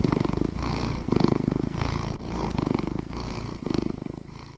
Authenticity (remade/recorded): remade